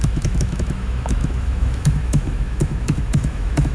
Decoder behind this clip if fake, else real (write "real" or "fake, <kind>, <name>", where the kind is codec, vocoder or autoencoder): fake, autoencoder, DAC-VAE